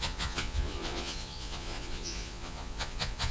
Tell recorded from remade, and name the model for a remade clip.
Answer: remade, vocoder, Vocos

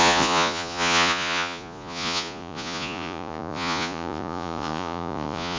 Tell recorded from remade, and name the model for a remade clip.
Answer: remade, vocoder, Vocos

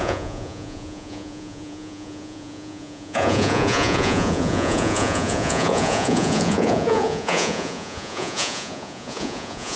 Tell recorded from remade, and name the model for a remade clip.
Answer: remade, vocoder, Vocos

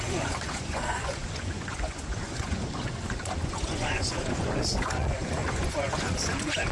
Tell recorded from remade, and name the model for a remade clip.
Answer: remade, vocoder, Vocos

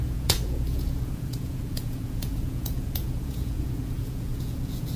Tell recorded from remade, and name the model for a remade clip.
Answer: remade, vocoder, Vocos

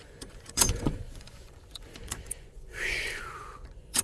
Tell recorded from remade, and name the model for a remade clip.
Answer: remade, vocoder, Vocos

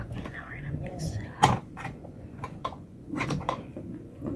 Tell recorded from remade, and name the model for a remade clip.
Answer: remade, vocoder, Vocos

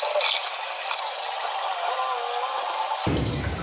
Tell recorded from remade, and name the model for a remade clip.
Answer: recorded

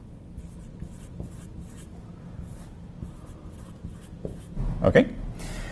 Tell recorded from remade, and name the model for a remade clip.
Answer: recorded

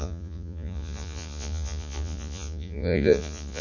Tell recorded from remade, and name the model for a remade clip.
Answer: remade, vocoder, Vocos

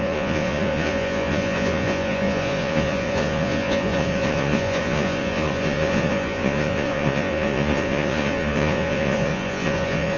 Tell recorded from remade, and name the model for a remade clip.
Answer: remade, vocoder, Vocos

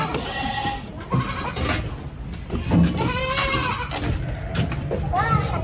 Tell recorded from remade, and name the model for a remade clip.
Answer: recorded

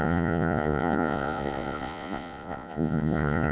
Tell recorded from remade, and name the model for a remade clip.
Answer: remade, vocoder, Vocos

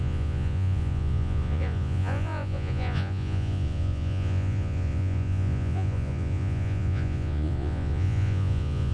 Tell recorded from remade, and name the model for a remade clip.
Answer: remade, vocoder, Vocos